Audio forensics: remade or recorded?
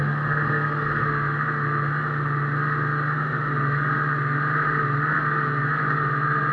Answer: recorded